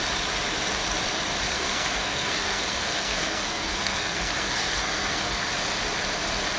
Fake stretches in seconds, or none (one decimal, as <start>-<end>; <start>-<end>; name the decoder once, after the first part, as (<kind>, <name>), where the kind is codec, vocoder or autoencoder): 1.5-5.5 (codec, SNAC)